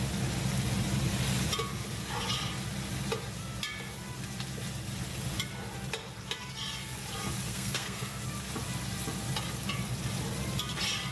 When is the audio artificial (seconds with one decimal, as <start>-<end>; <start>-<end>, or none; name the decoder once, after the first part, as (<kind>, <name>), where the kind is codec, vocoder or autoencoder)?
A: 7.5-8.2 (codec, SNAC)

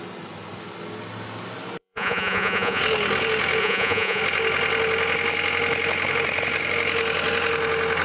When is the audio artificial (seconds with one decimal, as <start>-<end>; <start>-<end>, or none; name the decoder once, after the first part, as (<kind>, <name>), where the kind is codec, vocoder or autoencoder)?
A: 1.8-2.8 (vocoder, Vocos); 3.6-4.2

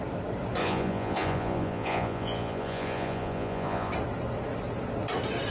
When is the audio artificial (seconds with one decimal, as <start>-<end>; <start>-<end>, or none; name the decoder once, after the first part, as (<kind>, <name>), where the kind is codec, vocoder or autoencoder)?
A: 0.6-3.9 (vocoder, Vocos)

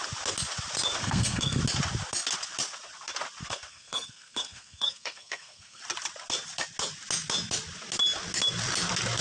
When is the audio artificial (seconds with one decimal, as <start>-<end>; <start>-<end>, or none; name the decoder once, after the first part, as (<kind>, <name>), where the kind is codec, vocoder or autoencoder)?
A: 1.0-1.6 (codec, SNAC); 3.4-5.8

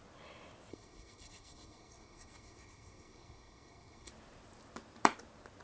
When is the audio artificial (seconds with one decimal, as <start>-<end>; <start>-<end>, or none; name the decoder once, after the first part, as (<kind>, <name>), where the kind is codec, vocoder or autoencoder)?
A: 0.7-4.1 (codec, SNAC)

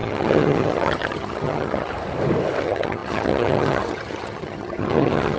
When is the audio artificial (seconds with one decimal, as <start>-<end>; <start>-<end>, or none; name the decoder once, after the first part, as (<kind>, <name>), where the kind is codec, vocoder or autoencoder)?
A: 0.0-1.9 (vocoder, HiFi-GAN); 2.6-5.4

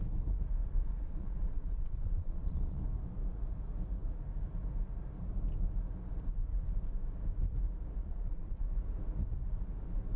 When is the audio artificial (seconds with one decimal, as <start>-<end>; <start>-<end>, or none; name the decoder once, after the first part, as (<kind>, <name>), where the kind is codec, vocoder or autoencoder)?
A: 0.6-2.8 (vocoder, Vocos); 8.0-8.6

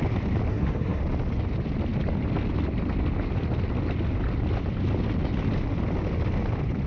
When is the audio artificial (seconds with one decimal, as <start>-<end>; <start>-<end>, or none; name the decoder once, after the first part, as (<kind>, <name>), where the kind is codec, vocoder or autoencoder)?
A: 0.5-1.0 (codec, SNAC)